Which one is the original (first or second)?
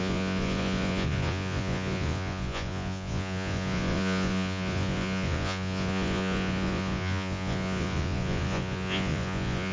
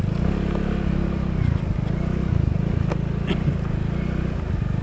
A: second